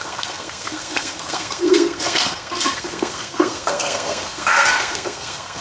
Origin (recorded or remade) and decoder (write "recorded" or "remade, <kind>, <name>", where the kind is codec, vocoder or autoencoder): remade, codec, SNAC